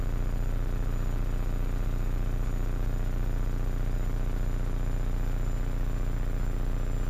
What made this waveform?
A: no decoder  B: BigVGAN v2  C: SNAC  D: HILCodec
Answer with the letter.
A